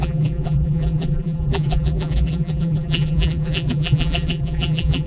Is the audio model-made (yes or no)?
yes